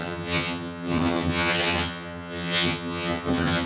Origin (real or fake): fake